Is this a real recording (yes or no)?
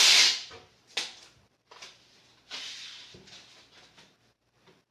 yes